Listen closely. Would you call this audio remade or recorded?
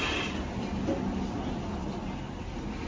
recorded